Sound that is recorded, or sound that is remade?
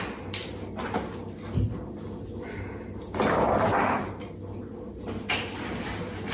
recorded